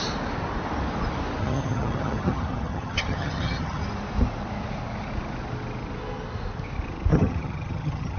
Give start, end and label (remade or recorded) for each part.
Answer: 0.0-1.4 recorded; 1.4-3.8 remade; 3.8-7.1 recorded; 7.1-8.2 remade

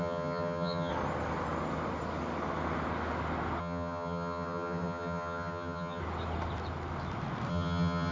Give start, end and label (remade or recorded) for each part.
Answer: 0.0-0.9 remade; 0.9-3.6 recorded; 3.6-6.0 remade; 6.0-7.5 recorded; 7.5-8.1 remade

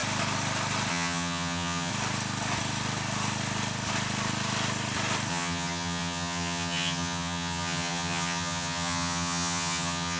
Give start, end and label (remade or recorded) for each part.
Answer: 0.0-0.9 recorded; 0.9-1.9 remade; 1.9-5.3 recorded; 5.3-10.2 remade

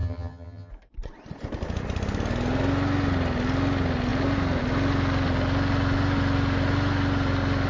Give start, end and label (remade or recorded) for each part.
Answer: 0.0-0.7 remade; 0.7-7.7 recorded

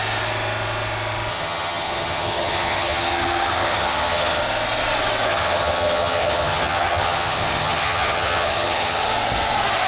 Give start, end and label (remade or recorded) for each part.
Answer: 0.0-1.3 recorded; 1.3-4.4 remade; 4.4-5.3 recorded; 5.3-9.1 remade; 9.1-9.9 recorded